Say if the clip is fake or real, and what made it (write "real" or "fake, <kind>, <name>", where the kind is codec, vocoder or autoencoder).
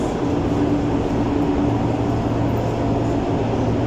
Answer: real